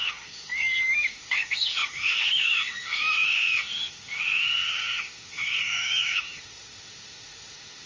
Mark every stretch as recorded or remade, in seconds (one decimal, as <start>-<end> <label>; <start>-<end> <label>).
0.0-7.9 remade